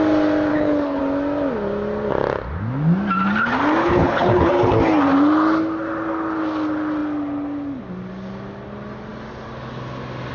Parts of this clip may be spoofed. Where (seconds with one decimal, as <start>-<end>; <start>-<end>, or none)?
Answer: 0.5-1.0; 3.8-4.5

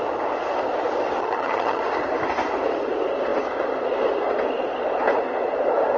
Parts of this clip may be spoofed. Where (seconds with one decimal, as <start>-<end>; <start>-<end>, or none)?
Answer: 1.2-1.8

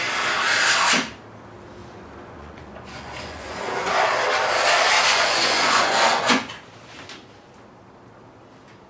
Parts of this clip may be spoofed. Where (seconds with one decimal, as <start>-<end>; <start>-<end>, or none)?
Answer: 1.8-3.9; 5.1-6.5

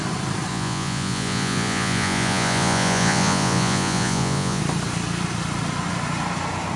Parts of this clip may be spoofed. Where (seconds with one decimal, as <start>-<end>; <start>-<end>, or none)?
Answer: 0.5-4.6

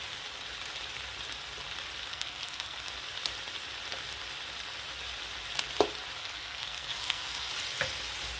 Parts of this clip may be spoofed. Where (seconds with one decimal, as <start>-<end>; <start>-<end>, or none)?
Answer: 2.1-2.9; 6.2-7.5

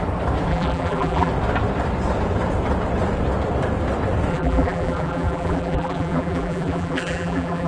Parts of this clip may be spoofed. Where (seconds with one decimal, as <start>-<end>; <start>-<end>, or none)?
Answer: 0.5-1.3; 4.3-7.7

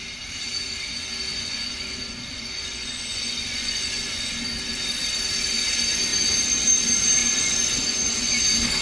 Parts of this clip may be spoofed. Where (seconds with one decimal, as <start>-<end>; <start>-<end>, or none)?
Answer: 1.3-4.3; 7.2-8.3